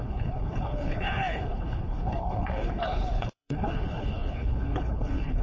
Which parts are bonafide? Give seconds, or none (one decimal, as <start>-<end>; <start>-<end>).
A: none